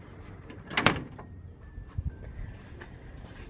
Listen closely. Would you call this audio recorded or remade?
remade